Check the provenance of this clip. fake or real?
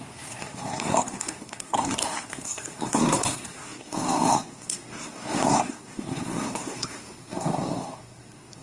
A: fake